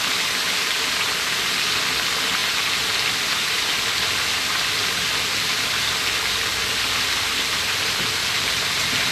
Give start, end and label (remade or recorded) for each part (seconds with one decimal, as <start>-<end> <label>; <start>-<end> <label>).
0.0-9.1 recorded